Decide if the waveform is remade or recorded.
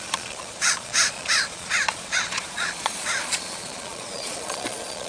remade